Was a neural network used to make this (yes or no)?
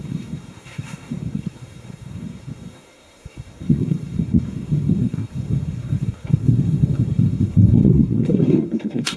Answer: yes